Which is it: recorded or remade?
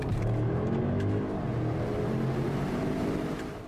remade